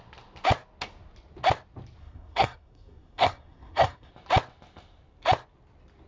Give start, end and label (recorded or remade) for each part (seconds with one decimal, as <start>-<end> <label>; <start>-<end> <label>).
0.0-2.0 recorded; 2.0-4.1 remade; 4.1-6.1 recorded

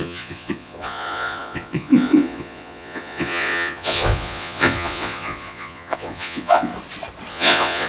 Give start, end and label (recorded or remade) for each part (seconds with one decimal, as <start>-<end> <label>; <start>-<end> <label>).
0.0-6.7 remade; 6.7-7.3 recorded; 7.3-7.9 remade

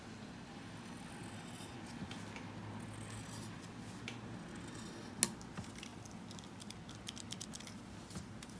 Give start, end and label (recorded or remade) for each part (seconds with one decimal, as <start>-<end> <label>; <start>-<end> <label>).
0.0-8.6 recorded